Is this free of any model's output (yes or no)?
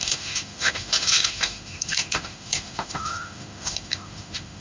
no